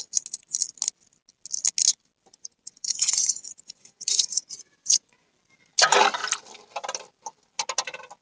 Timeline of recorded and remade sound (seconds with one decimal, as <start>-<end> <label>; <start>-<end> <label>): 0.0-2.4 recorded; 2.4-5.3 remade; 5.3-8.2 recorded